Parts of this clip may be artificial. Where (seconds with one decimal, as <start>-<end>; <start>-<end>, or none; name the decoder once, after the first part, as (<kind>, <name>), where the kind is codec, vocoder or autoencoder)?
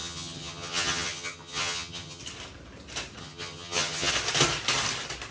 0.0-2.2 (vocoder, HiFi-GAN); 3.2-4.1